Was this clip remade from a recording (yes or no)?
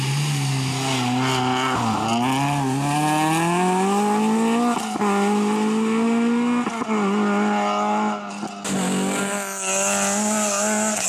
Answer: no